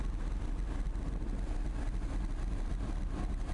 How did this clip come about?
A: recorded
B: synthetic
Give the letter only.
A